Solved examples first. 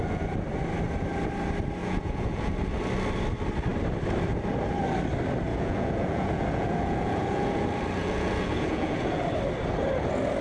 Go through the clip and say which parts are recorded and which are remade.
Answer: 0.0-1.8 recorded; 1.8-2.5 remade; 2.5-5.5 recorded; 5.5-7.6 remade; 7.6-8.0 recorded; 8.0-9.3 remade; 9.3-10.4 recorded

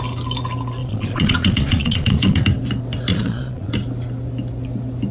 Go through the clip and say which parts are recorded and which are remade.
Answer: 0.0-0.8 recorded; 0.8-2.4 remade; 2.4-3.1 recorded; 3.1-3.7 remade; 3.7-5.1 recorded

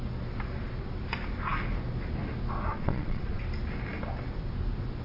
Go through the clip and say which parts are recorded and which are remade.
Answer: 0.0-2.7 recorded; 2.7-3.4 remade; 3.4-5.0 recorded

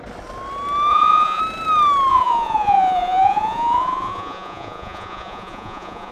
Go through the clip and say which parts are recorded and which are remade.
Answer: 0.0-0.9 recorded; 0.9-1.4 remade; 1.4-2.1 recorded; 2.1-6.1 remade

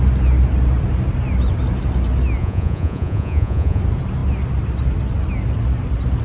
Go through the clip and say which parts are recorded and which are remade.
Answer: 0.0-2.4 recorded; 2.4-3.8 remade; 3.8-6.2 recorded

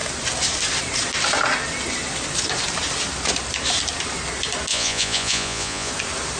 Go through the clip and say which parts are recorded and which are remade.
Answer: 0.0-4.7 recorded; 4.7-5.9 remade; 5.9-6.4 recorded

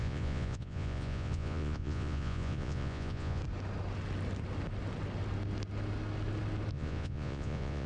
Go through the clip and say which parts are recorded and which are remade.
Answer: 0.0-3.4 remade; 3.4-6.7 recorded; 6.7-7.9 remade